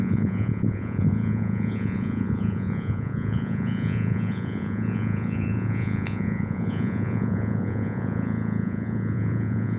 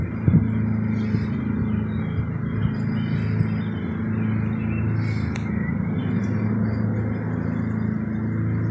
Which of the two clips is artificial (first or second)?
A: first